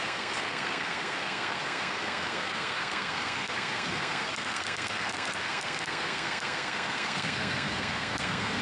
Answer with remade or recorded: remade